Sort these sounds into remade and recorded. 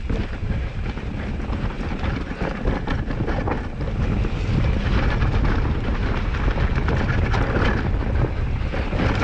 recorded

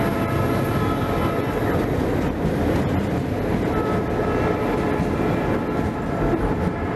recorded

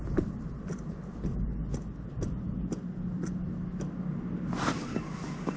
recorded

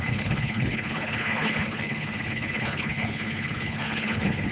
remade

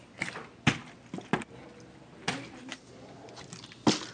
recorded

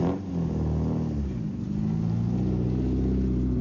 recorded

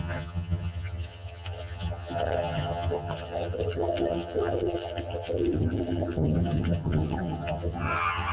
remade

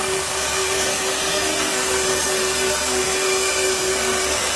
remade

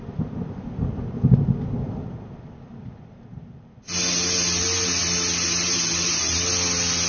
recorded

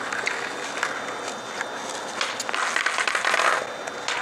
recorded